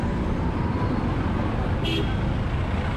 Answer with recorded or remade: recorded